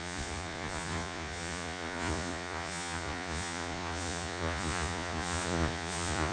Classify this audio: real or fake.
fake